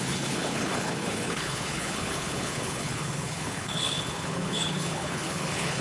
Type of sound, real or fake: fake